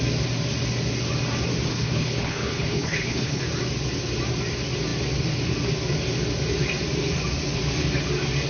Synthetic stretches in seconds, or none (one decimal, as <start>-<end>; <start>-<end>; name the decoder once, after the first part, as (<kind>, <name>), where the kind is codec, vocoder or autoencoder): 1.7-3.4 (codec, HILCodec)